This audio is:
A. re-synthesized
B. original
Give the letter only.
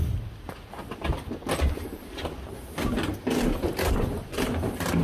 B